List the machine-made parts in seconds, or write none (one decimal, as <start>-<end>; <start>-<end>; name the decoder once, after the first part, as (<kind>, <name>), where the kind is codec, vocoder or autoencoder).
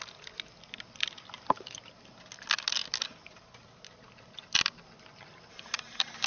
none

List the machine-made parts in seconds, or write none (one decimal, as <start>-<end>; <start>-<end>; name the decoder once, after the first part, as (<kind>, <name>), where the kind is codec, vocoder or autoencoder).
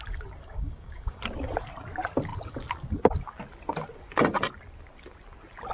0.4-1.2 (codec, DAC)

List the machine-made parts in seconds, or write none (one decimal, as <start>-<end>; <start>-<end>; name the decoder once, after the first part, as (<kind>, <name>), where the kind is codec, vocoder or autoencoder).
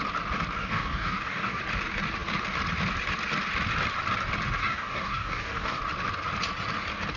0.6-1.6 (codec, DAC); 4.6-5.8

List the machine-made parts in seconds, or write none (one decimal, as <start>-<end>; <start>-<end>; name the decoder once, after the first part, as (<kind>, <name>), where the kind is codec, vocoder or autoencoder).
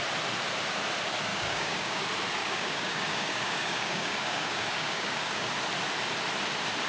1.3-2.0 (codec, DAC); 2.4-5.5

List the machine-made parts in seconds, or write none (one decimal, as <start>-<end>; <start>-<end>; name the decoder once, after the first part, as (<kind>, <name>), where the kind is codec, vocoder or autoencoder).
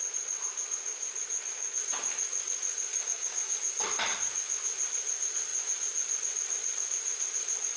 2.9-3.6 (codec, DAC)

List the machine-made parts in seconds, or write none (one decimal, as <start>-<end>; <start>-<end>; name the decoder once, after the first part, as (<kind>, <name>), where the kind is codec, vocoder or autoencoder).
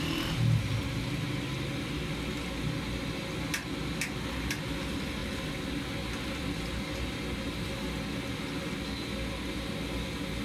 none